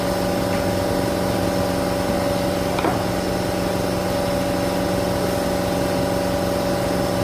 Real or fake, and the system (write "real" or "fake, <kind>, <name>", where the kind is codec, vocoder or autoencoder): real